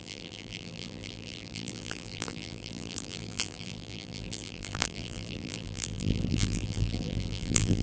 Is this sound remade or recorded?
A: remade